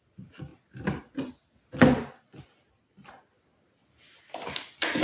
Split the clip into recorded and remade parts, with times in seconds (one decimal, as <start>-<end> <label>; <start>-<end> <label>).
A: 0.0-5.0 recorded